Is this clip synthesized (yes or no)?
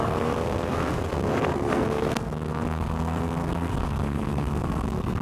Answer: yes